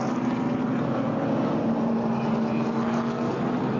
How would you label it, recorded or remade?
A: recorded